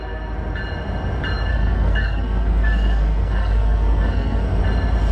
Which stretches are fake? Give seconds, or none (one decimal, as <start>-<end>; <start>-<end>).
1.5-4.6